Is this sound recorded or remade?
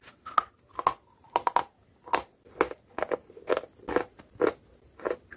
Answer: recorded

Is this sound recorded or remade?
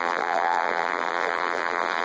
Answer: remade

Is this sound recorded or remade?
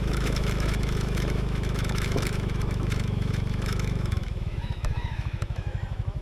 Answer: remade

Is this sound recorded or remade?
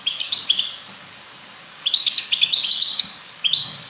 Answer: remade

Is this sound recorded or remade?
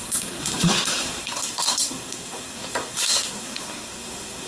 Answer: remade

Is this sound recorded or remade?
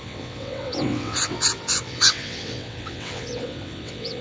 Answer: remade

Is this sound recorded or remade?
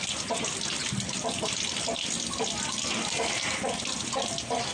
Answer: recorded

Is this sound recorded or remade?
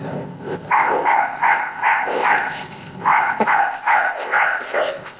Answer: remade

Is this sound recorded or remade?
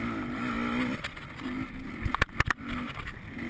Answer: recorded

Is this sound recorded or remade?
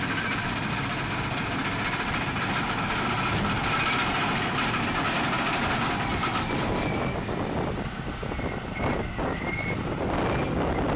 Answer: recorded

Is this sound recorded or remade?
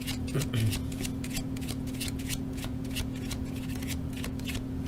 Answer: remade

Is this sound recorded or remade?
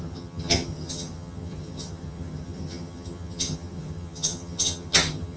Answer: remade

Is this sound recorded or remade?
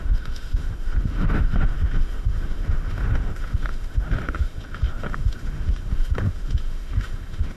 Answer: remade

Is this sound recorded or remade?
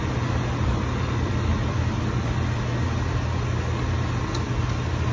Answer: recorded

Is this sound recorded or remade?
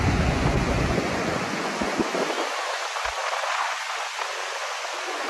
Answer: remade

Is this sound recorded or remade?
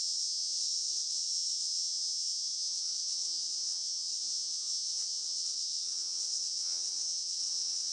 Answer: remade